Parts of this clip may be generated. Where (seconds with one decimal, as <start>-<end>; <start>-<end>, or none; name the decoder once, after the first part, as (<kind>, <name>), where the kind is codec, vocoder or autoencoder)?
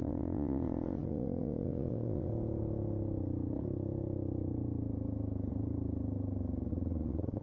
0.0-2.3 (vocoder, Vocos); 6.7-7.4